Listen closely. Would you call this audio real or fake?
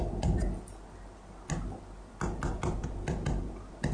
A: real